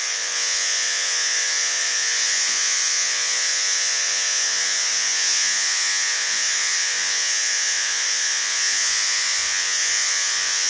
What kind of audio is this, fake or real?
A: fake